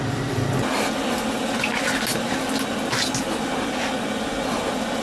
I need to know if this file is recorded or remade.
recorded